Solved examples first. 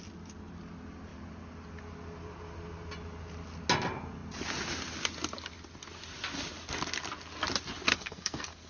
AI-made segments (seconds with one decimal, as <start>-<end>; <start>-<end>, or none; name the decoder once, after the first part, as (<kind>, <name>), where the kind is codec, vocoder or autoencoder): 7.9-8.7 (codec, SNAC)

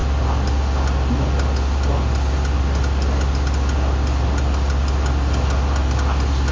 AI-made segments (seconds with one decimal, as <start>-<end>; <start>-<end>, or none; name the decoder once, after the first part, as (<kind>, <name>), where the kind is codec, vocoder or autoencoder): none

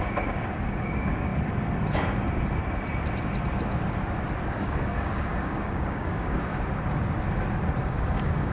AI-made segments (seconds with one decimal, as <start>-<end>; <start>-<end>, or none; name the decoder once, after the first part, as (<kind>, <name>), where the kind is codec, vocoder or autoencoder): 0.0-1.3 (codec, DAC); 4.5-6.5; 7.8-8.5

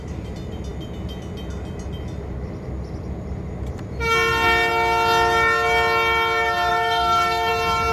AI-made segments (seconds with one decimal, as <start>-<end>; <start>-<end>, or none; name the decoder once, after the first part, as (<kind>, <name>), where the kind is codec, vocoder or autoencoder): 6.7-7.5 (codec, DAC)